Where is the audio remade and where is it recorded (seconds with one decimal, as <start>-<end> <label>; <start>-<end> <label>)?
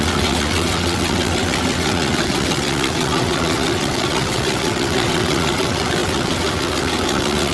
0.0-7.5 remade